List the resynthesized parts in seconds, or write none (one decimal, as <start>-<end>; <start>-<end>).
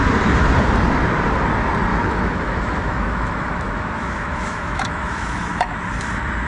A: 1.9-5.8